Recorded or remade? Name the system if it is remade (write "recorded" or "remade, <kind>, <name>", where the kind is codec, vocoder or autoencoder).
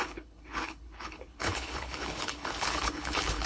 remade, codec, HILCodec